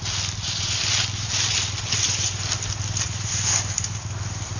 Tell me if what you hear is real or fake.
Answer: real